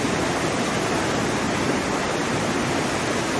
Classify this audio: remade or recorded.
recorded